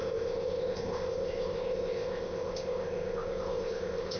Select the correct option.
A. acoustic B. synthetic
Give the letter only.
B